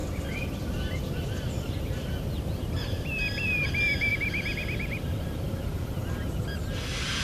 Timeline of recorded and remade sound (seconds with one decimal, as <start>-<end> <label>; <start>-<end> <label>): 0.0-6.0 remade; 6.0-7.2 recorded